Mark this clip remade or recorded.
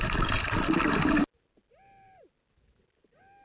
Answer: recorded